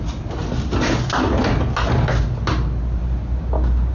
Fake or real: real